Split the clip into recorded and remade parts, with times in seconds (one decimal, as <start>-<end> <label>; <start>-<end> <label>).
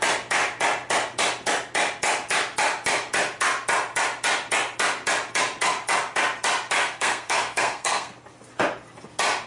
0.0-6.8 recorded; 6.8-8.2 remade; 8.2-9.5 recorded